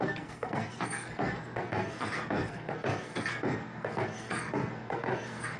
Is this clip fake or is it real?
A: fake